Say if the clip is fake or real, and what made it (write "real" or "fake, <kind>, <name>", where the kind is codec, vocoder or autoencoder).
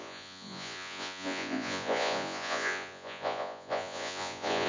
fake, vocoder, Vocos